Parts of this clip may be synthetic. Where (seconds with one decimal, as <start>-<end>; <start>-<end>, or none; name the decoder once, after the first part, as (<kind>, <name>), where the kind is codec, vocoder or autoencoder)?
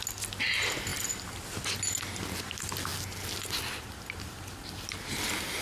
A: none